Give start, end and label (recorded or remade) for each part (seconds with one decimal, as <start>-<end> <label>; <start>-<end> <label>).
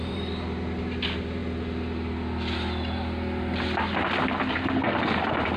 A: 0.0-1.4 remade; 1.4-4.0 recorded; 4.0-5.6 remade